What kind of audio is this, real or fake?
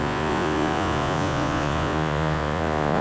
fake